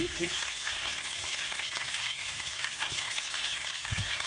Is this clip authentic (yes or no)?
no